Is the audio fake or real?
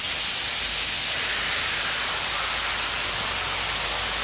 real